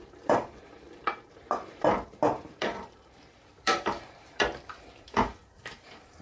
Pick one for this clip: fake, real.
fake